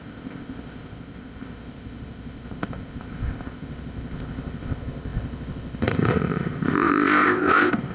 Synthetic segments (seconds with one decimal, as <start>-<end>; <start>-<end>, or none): 0.0-7.9